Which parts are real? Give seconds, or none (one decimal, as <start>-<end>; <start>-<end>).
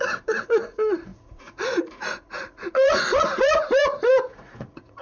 none